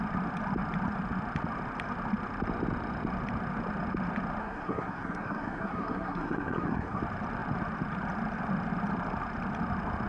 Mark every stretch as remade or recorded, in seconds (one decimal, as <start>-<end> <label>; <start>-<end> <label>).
0.0-4.4 recorded; 4.4-7.0 remade; 7.0-10.1 recorded